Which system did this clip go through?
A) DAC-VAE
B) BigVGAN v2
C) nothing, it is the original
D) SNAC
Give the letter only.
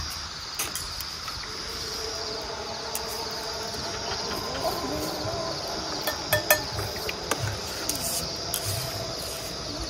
C